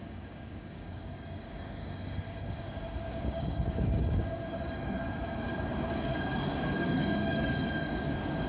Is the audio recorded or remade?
remade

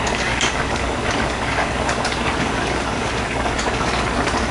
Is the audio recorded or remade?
remade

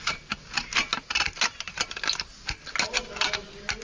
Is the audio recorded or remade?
recorded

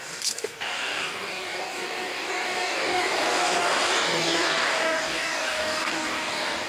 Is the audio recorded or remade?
remade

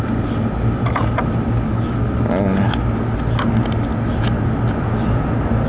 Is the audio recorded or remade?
recorded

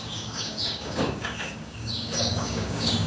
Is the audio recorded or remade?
remade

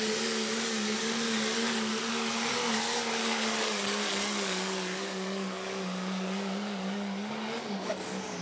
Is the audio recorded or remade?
remade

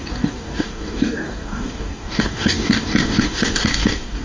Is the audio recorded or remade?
remade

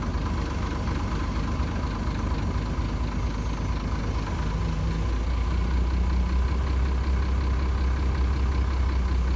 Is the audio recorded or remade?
recorded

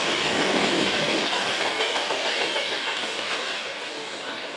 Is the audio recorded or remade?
remade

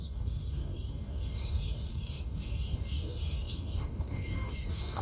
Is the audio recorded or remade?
remade